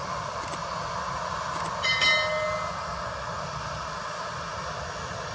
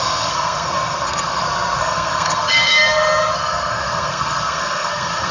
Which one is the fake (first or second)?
second